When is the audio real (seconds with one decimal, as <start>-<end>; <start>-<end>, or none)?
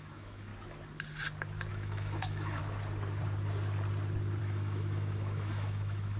0.5-1.7; 2.6-4.4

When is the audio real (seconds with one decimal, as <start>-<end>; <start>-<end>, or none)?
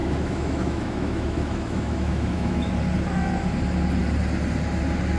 2.7-5.2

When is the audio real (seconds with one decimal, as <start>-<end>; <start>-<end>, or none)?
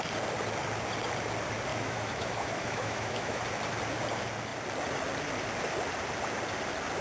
0.0-1.7; 3.4-7.0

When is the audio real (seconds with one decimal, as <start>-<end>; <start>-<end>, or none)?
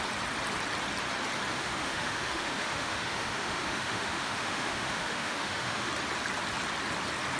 0.0-1.5; 5.9-7.4